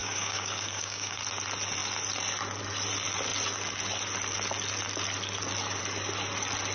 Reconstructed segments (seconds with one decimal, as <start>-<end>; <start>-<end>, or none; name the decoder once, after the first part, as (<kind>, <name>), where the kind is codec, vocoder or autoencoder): 0.0-1.2 (codec, DAC)